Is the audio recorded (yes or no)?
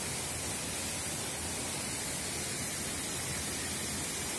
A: yes